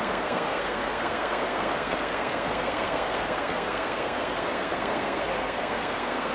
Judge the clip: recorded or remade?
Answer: remade